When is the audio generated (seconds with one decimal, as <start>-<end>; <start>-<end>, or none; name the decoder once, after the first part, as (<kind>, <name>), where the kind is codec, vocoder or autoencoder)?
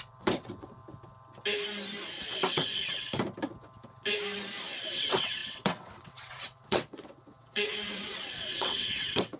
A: 0.0-0.8 (vocoder, WaveNeXt); 2.2-2.7; 4.9-9.4